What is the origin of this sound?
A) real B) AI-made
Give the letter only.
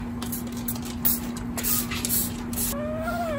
A